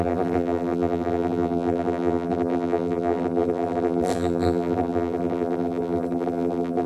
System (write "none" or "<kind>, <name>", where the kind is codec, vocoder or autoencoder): vocoder, BigVGAN v2